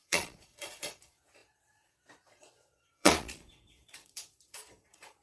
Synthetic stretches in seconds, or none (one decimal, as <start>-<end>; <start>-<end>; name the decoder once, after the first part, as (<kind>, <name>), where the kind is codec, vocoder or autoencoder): 0.0-5.2 (vocoder, Vocos)